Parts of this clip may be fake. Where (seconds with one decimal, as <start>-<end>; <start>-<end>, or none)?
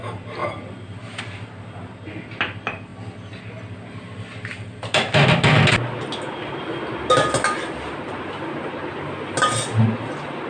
0.4-1.2